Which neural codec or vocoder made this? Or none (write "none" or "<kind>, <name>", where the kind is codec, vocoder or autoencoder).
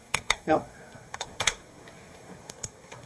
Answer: codec, SNAC